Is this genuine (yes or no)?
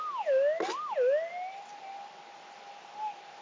yes